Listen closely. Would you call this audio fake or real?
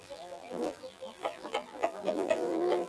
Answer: fake